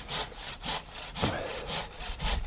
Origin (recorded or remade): recorded